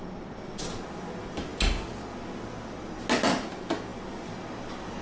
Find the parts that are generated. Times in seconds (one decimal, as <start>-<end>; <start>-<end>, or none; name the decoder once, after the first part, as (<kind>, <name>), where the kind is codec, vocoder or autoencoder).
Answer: none